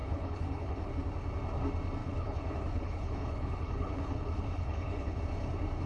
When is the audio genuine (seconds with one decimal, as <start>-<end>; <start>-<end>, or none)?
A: 0.9-2.0; 5.2-5.9